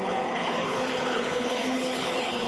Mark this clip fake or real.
fake